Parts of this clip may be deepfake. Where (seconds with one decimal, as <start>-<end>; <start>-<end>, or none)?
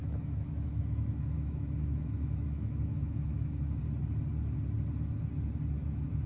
0.0-3.8